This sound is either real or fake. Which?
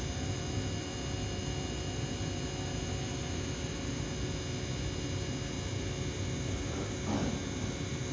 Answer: real